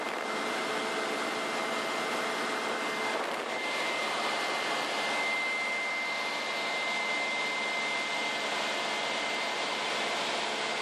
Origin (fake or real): real